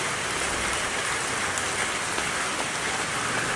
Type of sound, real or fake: real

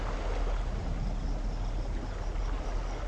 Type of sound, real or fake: real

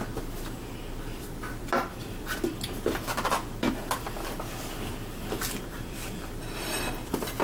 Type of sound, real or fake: fake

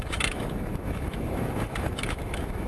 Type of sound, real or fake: fake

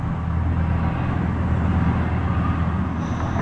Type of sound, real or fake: real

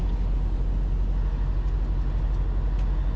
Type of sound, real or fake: real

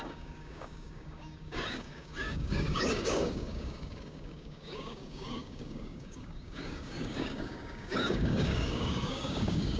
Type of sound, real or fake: fake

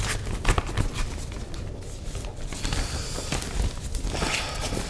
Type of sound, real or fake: real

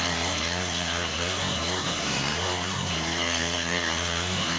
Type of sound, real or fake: fake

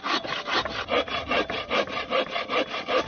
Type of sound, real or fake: real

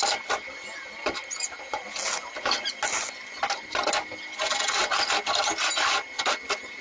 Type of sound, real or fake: real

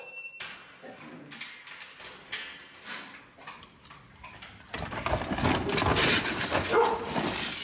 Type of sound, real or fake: real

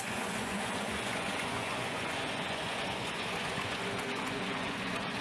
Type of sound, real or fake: fake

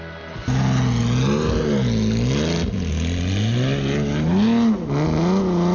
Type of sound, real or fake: real